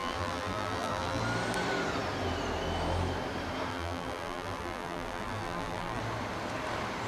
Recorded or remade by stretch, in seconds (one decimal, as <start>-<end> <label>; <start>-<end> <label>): 0.0-1.2 remade; 1.2-3.7 recorded; 3.7-6.0 remade; 6.0-7.1 recorded

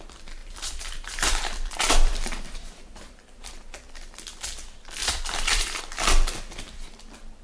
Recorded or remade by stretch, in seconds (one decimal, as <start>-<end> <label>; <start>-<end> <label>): 0.0-0.4 recorded; 0.4-3.5 remade; 3.5-5.0 recorded; 5.0-5.8 remade; 5.8-7.4 recorded

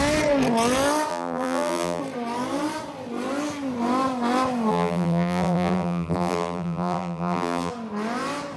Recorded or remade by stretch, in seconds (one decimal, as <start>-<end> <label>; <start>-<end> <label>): 0.0-1.1 recorded; 1.1-2.0 remade; 2.0-4.7 recorded; 4.7-7.7 remade; 7.7-8.6 recorded

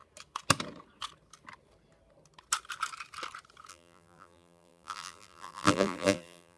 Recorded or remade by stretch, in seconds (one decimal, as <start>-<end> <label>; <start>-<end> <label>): 0.0-3.7 recorded; 3.7-6.6 remade

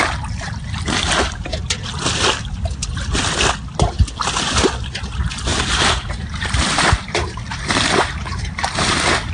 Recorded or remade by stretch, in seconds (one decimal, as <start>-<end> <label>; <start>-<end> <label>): 0.0-5.5 recorded; 5.5-6.5 remade; 6.5-8.3 recorded; 8.3-9.3 remade

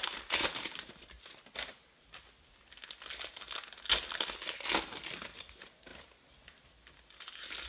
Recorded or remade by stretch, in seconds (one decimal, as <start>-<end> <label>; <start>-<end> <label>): 0.0-7.7 recorded